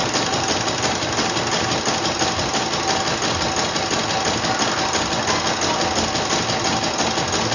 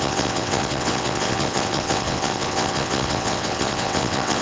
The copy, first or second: second